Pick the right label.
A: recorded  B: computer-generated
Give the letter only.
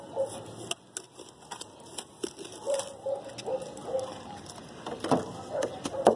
A